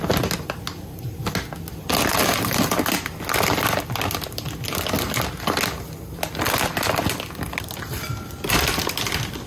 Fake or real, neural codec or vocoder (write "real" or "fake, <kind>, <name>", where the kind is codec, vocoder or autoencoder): real